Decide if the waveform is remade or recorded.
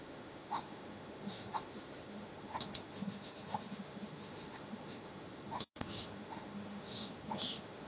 remade